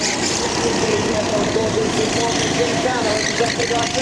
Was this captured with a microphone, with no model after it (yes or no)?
no